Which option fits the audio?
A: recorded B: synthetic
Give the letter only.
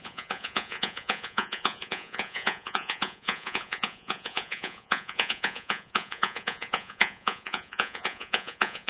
B